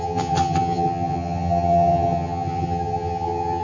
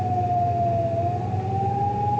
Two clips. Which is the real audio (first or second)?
second